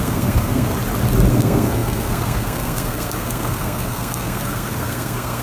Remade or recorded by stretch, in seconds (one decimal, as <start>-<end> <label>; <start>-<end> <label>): 0.0-0.7 remade; 0.7-1.3 recorded; 1.3-5.4 remade